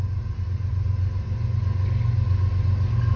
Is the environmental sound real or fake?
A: real